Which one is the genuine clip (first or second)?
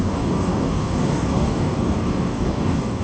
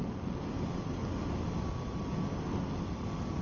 second